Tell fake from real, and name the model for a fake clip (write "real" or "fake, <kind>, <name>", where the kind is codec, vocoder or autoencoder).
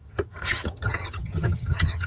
fake, vocoder, HiFi-GAN